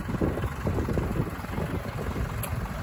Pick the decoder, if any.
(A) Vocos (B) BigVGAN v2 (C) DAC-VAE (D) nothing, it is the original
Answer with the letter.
D